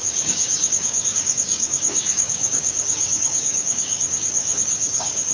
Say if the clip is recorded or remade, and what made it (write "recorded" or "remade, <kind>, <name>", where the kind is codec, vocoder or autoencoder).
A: remade, codec, DAC